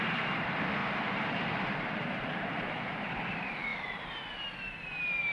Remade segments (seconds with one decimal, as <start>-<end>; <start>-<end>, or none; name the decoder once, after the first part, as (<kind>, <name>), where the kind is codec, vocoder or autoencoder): 0.8-2.8 (vocoder, BigVGAN v2)